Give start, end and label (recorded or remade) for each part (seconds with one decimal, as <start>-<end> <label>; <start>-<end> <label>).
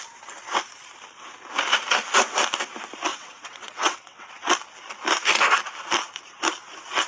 0.0-3.1 recorded; 3.1-4.3 remade; 4.3-7.1 recorded